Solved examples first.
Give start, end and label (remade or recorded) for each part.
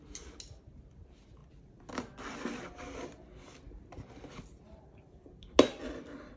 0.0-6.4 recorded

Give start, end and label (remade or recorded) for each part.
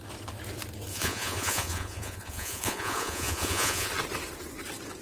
0.0-0.9 recorded; 0.9-3.9 remade; 3.9-5.0 recorded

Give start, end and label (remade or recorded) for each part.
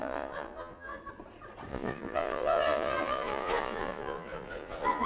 0.0-1.0 remade; 1.0-1.7 recorded; 1.7-5.1 remade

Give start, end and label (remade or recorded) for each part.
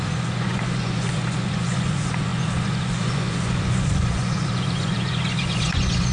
0.0-6.1 remade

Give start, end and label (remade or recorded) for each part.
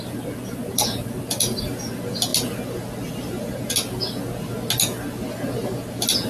0.0-6.3 recorded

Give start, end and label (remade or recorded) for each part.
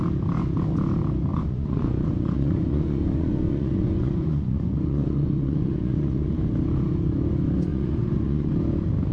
0.0-1.3 recorded; 1.3-6.4 remade; 6.4-7.7 recorded; 7.7-8.5 remade; 8.5-9.1 recorded